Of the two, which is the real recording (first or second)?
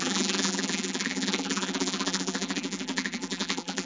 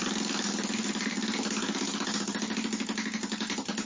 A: second